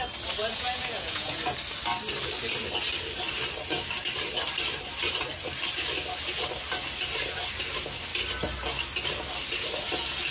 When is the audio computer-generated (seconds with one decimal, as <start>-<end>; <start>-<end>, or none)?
0.4-1.4